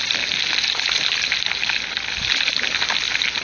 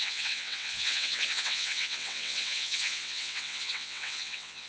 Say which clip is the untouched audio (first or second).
first